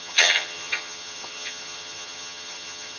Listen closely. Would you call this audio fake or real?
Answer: fake